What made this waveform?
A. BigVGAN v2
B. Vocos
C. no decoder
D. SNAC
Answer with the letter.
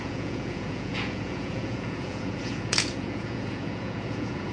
B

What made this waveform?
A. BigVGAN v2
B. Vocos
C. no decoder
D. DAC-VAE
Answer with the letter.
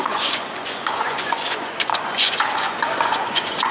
B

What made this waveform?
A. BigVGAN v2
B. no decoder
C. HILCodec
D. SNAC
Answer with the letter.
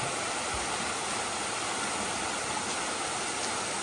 B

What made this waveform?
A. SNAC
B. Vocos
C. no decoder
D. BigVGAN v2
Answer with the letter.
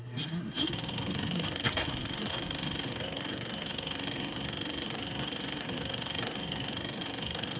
A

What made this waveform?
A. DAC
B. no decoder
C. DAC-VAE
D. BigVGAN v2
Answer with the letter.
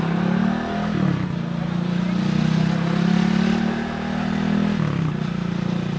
B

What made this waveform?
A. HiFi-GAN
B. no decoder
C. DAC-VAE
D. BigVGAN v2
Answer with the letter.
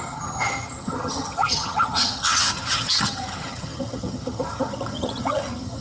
A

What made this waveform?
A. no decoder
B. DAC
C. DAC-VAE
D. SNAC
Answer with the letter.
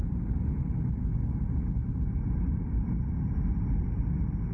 A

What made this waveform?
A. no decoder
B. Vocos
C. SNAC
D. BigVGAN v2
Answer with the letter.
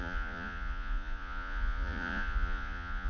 B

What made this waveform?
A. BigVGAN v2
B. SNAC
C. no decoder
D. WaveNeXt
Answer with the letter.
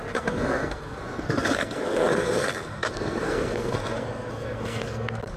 B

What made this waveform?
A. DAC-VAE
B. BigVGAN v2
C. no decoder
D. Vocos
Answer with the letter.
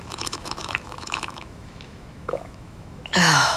A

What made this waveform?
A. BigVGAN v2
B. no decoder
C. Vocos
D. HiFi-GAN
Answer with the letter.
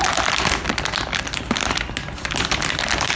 B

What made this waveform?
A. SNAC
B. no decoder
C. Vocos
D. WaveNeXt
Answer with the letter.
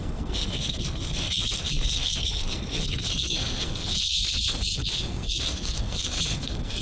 A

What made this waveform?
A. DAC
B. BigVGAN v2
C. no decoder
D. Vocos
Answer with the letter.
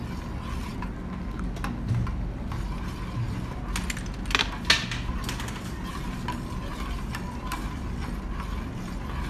C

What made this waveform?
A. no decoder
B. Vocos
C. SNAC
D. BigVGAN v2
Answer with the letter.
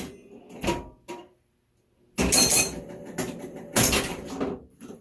A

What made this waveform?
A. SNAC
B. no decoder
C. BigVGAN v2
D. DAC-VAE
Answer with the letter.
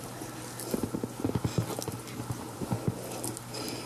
B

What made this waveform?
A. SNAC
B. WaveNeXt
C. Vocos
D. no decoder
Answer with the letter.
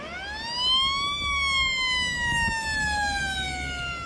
D